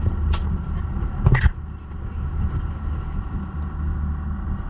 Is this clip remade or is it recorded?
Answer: recorded